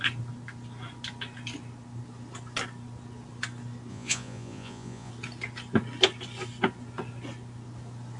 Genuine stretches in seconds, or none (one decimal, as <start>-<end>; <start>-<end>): 0.0-3.9; 5.1-8.2